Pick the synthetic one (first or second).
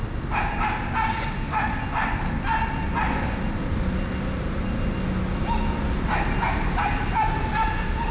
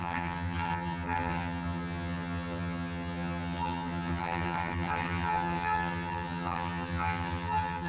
second